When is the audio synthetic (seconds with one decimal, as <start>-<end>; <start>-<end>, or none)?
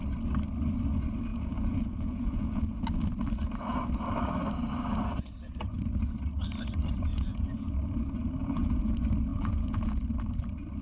1.3-2.8; 7.1-7.7; 8.4-8.9; 9.3-10.0